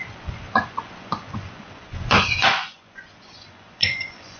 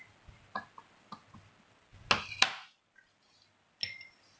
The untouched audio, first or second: second